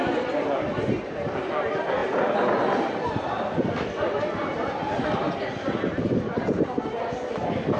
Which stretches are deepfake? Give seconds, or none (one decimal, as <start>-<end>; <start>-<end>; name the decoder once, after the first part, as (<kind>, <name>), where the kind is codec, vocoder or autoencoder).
0.0-2.0 (vocoder, BigVGAN v2); 3.1-7.8